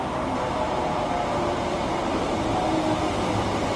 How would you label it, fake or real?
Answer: fake